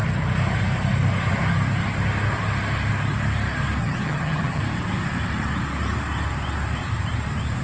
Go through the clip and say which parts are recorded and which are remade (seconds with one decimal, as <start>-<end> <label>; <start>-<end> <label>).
0.0-3.8 recorded; 3.8-4.6 remade; 4.6-7.6 recorded